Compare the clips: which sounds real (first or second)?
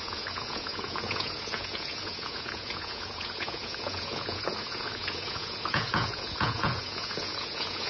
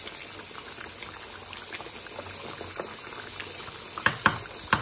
second